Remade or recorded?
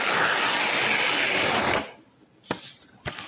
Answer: recorded